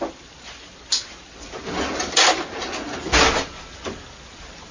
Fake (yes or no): no